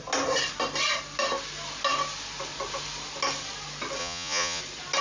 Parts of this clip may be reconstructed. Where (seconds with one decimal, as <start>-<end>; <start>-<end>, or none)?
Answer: 4.0-4.6